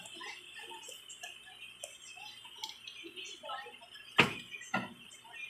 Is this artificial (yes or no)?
no